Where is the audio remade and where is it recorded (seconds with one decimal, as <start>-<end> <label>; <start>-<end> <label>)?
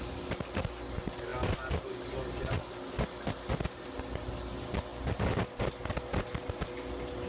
0.0-4.9 recorded; 4.9-5.7 remade; 5.7-7.3 recorded